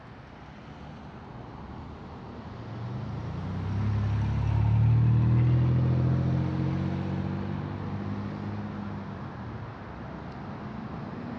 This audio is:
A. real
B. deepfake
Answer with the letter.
A